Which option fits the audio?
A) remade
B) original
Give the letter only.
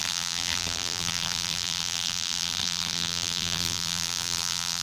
A